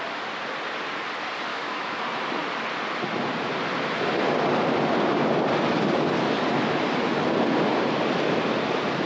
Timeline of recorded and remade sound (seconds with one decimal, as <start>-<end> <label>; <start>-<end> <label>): 0.0-1.5 recorded; 1.5-2.0 remade; 2.0-9.1 recorded

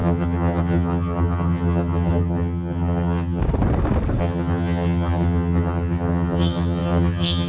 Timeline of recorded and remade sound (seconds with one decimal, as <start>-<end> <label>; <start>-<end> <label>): 0.0-3.4 remade; 3.4-4.2 recorded; 4.2-7.5 remade